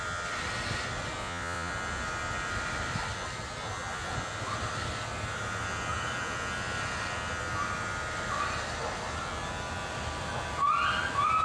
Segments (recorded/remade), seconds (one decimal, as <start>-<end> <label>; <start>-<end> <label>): 0.0-1.2 recorded; 1.2-1.7 remade; 1.7-11.4 recorded